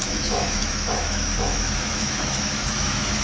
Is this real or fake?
fake